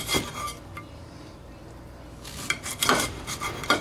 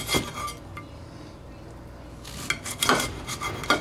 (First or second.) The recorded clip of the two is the second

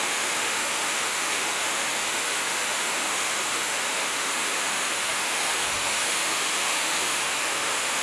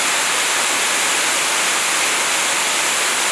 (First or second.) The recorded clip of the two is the second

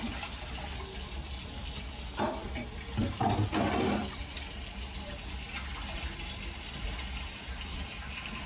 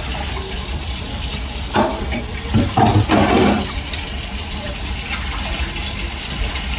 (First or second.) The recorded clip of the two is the first